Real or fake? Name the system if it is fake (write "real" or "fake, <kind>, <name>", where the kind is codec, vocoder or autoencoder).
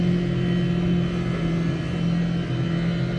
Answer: real